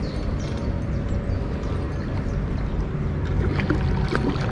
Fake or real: real